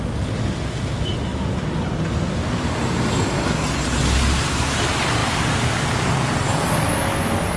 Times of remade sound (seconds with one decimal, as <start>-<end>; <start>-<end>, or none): none